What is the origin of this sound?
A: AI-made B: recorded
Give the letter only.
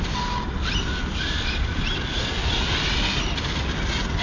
B